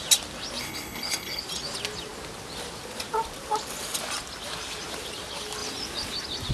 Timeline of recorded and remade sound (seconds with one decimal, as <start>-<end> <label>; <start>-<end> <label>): 0.0-0.6 recorded; 0.6-1.4 remade; 1.4-6.5 recorded